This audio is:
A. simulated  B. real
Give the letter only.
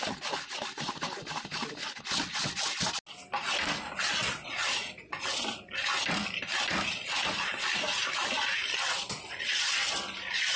B